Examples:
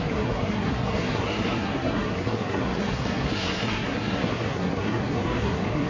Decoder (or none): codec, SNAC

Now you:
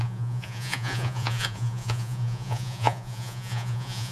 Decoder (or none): vocoder, Vocos